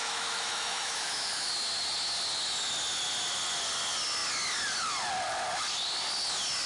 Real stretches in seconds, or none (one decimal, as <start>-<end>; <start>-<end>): 1.5-6.7